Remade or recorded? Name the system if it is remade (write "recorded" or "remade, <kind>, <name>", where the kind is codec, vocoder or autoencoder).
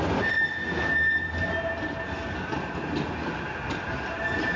recorded